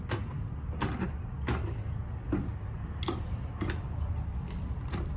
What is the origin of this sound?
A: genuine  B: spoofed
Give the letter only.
A